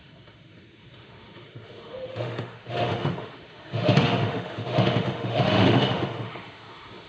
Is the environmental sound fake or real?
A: fake